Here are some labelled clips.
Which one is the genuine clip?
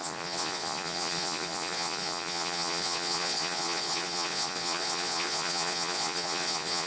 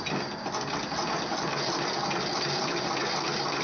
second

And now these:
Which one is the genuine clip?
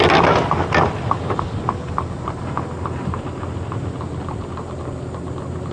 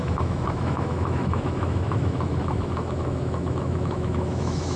first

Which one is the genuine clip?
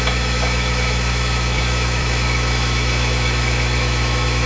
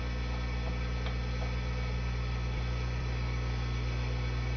second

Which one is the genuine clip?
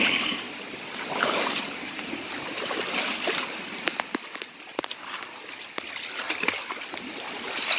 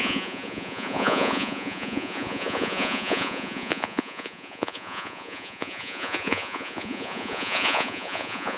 first